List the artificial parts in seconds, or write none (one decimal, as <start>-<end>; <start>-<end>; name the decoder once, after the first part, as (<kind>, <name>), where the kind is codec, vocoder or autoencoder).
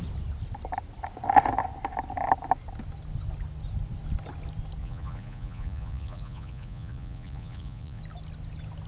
4.8-8.0 (vocoder, Vocos)